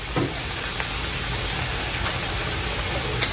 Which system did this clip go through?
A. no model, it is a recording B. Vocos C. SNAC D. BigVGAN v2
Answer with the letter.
A